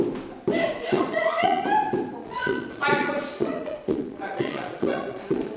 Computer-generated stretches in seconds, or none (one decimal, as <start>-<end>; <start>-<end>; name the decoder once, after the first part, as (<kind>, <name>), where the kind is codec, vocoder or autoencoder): 0.8-1.6 (vocoder, Vocos); 2.2-5.6